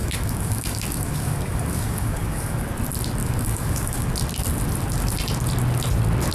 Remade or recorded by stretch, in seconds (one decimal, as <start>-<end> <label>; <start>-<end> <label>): 0.0-2.7 remade; 2.7-3.2 recorded; 3.2-4.1 remade; 4.1-6.3 recorded